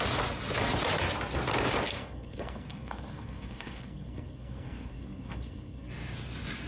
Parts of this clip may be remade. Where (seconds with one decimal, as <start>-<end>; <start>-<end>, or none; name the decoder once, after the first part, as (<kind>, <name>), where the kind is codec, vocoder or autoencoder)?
1.9-5.9 (codec, SNAC)